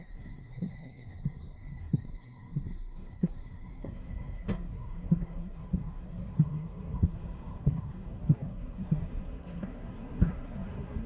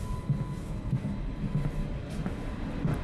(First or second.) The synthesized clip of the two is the first